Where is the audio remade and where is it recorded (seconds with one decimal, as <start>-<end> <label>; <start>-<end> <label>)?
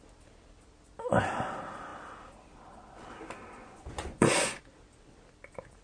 0.0-3.6 recorded; 3.6-4.6 remade; 4.6-5.8 recorded